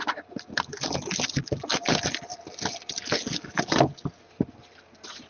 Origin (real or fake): real